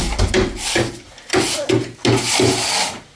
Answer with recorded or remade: recorded